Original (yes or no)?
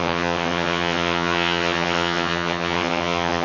no